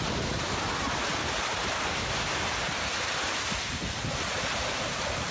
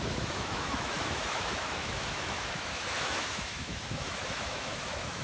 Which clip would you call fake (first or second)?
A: second